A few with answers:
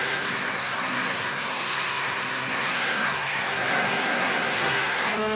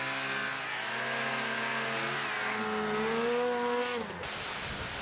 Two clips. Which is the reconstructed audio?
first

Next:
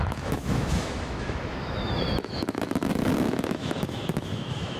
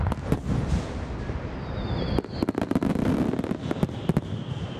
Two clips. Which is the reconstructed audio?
first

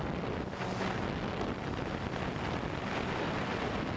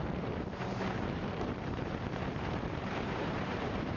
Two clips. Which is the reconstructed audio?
second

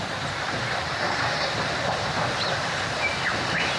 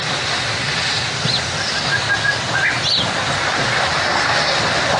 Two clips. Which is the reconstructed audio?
first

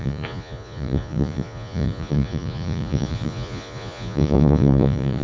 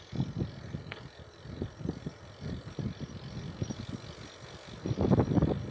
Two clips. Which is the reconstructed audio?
first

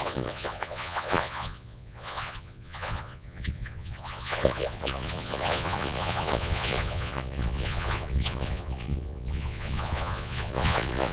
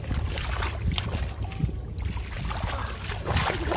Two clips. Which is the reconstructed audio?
first